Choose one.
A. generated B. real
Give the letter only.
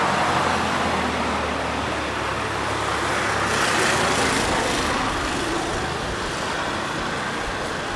B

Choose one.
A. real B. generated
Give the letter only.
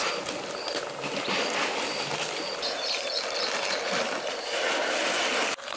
A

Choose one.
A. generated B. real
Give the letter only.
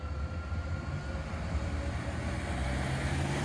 B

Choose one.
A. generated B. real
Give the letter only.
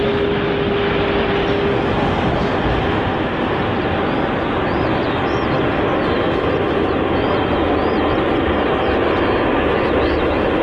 B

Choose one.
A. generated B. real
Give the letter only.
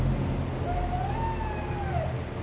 B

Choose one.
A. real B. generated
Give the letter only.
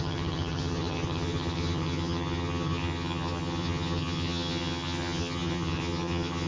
B